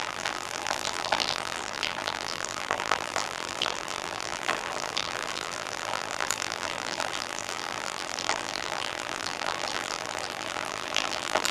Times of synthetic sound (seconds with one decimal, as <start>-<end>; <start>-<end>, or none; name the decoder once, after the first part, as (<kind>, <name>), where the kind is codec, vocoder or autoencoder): 0.0-11.5 (vocoder, BigVGAN v2)